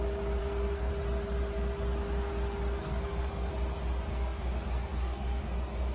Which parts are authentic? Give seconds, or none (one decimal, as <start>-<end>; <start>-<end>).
0.0-0.4; 0.9-2.8; 3.5-4.1; 5.4-5.9